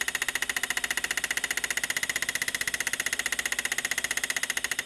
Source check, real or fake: real